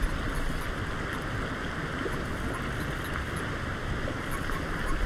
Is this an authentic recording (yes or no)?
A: yes